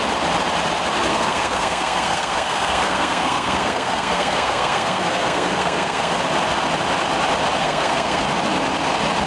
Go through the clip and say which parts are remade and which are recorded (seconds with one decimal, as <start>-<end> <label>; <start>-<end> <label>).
0.0-1.1 recorded; 1.1-6.2 remade; 6.2-7.6 recorded; 7.6-8.2 remade; 8.2-9.3 recorded